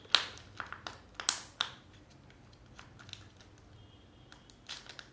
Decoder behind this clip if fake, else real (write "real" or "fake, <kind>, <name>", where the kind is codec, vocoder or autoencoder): real